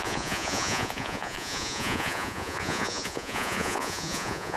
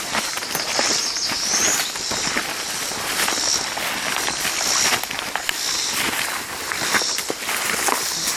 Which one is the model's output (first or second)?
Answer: first